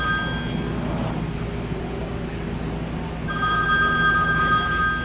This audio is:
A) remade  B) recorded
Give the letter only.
B